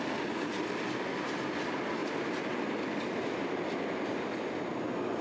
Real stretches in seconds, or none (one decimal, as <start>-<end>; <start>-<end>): 0.0-5.2